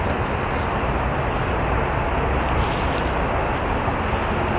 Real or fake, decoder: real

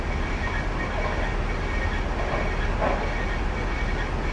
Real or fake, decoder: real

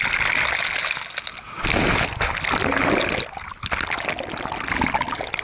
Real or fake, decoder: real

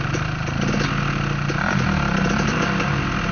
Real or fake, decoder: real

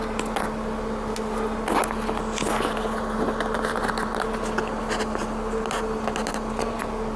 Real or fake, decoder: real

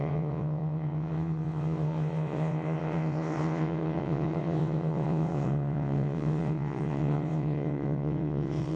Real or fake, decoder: fake, vocoder, WaveNeXt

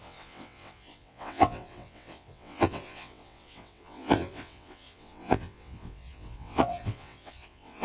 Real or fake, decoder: fake, vocoder, WaveNeXt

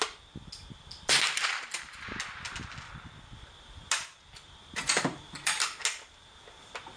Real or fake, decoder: real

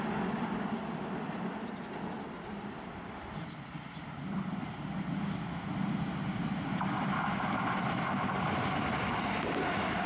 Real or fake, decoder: real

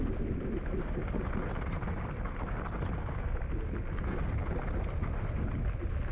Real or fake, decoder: real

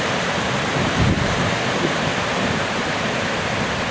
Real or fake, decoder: real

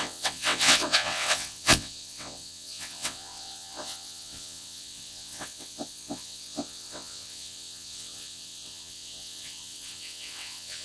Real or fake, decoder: fake, vocoder, WaveNeXt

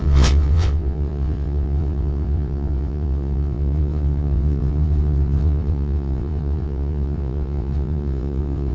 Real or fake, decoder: fake, vocoder, WaveNeXt